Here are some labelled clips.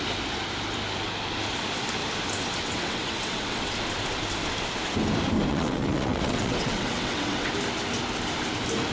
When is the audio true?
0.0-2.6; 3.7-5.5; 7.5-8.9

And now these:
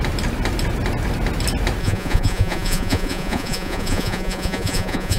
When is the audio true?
0.0-1.8

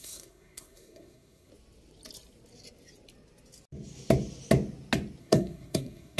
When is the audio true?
1.5-5.2

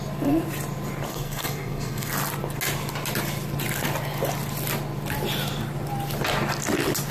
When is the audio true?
0.0-1.1; 2.1-7.1

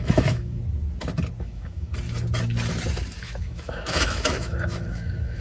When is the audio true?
0.6-1.4; 1.9-3.2